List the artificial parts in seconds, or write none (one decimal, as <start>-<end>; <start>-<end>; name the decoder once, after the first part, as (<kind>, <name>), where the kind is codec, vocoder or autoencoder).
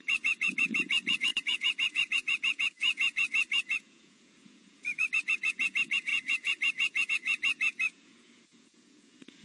0.0-9.4 (vocoder, Vocos)